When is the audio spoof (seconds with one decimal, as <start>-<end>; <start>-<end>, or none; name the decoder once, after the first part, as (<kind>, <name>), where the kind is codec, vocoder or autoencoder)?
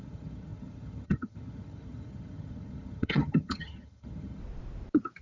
0.0-4.4 (vocoder, HiFi-GAN)